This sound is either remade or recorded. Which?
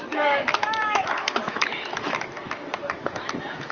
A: remade